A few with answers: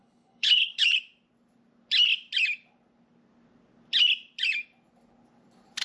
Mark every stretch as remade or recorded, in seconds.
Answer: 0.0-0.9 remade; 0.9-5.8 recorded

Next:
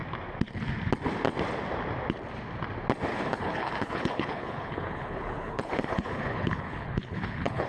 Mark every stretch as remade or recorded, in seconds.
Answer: 0.0-3.1 recorded; 3.1-7.7 remade

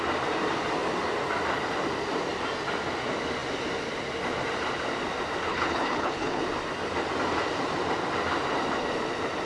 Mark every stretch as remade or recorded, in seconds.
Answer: 0.0-5.5 recorded; 5.5-6.4 remade; 6.4-9.5 recorded

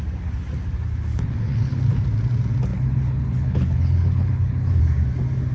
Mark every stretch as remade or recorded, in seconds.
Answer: 0.0-1.1 recorded; 1.1-1.8 remade; 1.8-2.7 recorded; 2.7-4.8 remade; 4.8-5.5 recorded

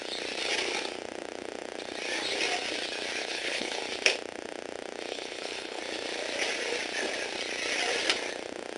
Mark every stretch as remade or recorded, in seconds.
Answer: 0.0-3.2 recorded; 3.2-3.8 remade; 3.8-5.1 recorded; 5.1-5.8 remade; 5.8-8.8 recorded

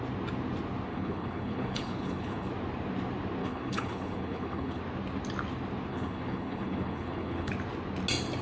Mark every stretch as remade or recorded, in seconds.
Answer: 0.0-0.9 recorded; 0.9-2.5 remade; 2.5-3.4 recorded; 3.4-4.8 remade; 4.8-5.9 recorded; 5.9-7.5 remade; 7.5-8.4 recorded

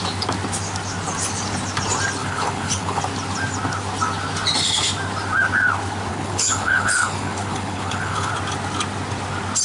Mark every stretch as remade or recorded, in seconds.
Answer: 0.0-2.2 recorded; 2.2-3.0 remade; 3.0-6.1 recorded; 6.1-8.3 remade; 8.3-9.6 recorded